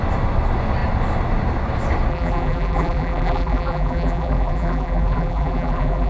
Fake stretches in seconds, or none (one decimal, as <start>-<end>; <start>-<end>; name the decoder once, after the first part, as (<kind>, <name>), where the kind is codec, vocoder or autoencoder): 2.1-6.1 (vocoder, BigVGAN v2)